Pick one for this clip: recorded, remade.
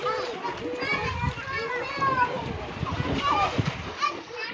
recorded